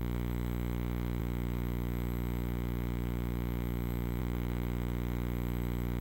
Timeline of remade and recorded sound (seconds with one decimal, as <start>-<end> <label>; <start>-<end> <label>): 0.0-1.2 remade; 1.2-4.2 recorded; 4.2-6.0 remade